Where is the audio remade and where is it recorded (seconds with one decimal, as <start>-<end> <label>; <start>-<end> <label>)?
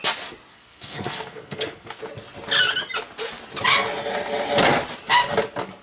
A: 0.0-0.5 recorded; 0.5-2.0 remade; 2.0-5.8 recorded